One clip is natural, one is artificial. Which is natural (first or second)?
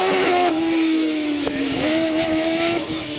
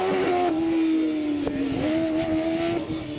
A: second